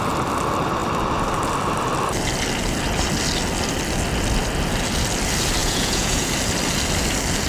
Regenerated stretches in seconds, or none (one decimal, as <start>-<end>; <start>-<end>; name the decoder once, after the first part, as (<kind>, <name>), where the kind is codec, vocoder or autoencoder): 5.6-6.3 (vocoder, Vocos)